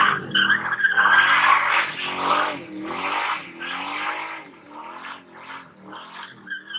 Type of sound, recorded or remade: recorded